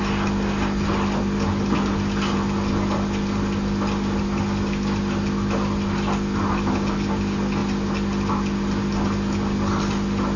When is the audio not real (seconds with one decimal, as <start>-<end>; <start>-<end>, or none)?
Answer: none